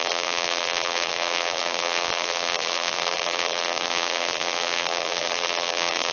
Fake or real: fake